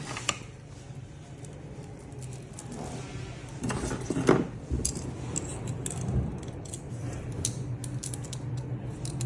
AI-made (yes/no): no